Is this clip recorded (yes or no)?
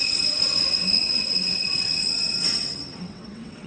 no